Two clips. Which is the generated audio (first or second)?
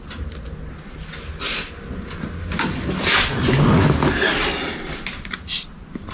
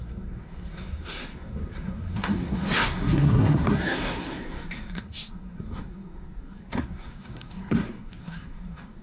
second